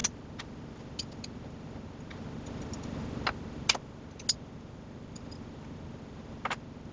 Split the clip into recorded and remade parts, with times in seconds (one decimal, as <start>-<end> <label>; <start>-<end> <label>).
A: 0.0-6.9 recorded